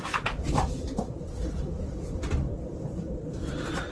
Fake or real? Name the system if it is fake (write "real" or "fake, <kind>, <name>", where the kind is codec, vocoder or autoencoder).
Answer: fake, vocoder, BigVGAN v2